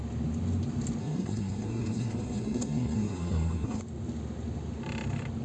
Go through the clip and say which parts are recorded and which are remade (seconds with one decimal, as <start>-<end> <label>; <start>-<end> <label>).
0.0-1.0 recorded; 1.0-3.8 remade; 3.8-5.4 recorded